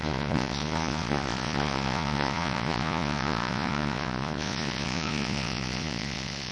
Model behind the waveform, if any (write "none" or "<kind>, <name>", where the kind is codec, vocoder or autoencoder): vocoder, Vocos